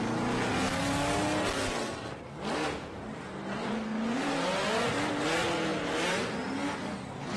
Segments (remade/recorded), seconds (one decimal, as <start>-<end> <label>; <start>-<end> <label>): 0.0-2.6 recorded; 2.6-4.8 remade; 4.8-5.7 recorded; 5.7-6.4 remade; 6.4-7.4 recorded